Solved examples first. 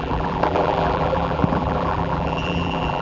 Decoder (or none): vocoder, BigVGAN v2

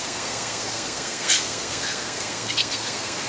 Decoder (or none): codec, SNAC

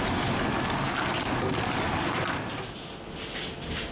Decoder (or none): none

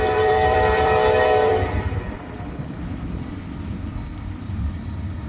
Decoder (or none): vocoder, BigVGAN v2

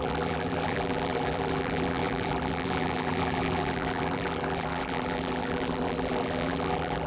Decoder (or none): vocoder, BigVGAN v2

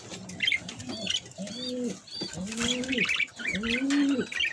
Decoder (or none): none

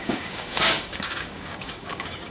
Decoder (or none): codec, DAC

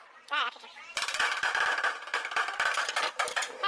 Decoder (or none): vocoder, BigVGAN v2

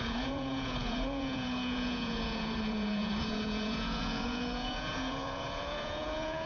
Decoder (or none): vocoder, Vocos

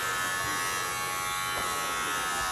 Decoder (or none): none